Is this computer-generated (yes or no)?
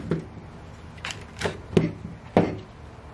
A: no